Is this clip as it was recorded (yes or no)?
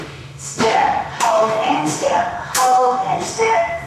no